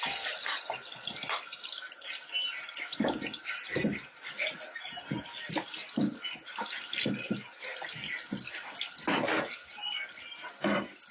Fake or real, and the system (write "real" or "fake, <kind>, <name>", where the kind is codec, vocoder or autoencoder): real